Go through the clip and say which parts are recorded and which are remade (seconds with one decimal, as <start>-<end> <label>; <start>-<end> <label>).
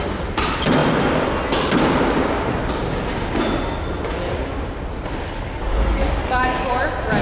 0.0-5.7 recorded; 5.7-6.7 remade; 6.7-7.2 recorded